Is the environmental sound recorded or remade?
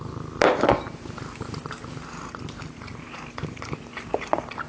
recorded